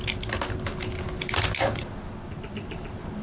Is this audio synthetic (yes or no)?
no